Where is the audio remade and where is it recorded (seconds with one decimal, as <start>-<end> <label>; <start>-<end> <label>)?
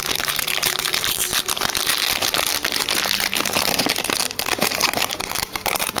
0.0-1.3 remade; 1.3-4.4 recorded; 4.4-6.0 remade